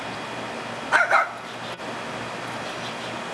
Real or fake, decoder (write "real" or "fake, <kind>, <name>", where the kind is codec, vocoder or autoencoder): real